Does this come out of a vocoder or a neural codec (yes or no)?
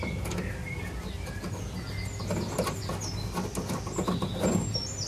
no